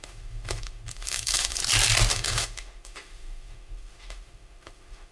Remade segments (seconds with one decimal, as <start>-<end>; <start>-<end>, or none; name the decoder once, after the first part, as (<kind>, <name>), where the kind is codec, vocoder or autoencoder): 0.0-1.6 (autoencoder, DAC-VAE); 2.1-5.1